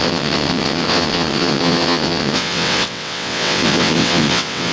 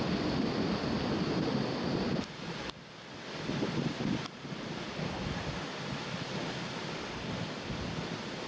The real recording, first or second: second